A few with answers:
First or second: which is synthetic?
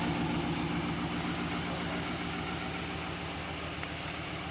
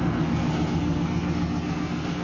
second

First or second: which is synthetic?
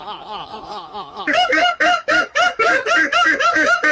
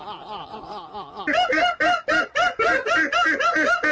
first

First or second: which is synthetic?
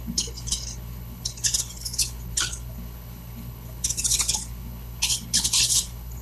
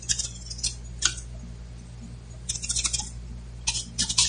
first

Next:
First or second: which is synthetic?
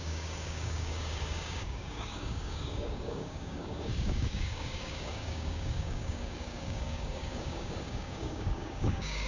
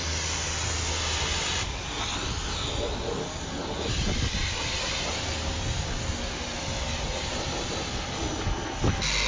first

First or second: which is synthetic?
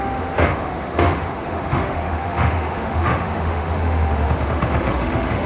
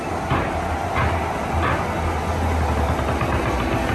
first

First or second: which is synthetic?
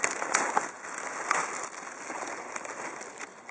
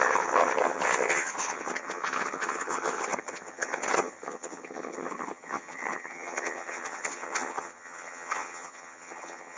second